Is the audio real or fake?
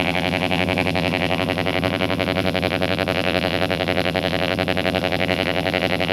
fake